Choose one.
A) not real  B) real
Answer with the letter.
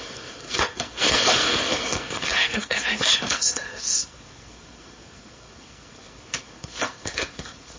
A